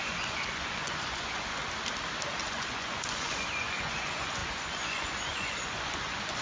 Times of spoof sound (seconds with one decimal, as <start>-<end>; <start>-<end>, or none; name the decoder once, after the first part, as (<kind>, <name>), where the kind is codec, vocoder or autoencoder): 0.0-1.6 (vocoder, Vocos); 2.4-6.4